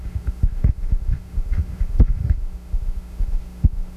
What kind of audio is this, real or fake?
fake